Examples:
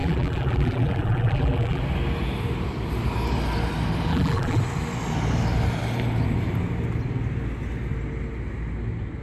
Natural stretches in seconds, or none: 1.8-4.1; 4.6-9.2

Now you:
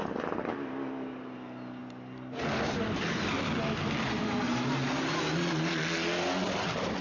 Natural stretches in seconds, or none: 0.0-7.0